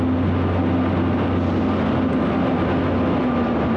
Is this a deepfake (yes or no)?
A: no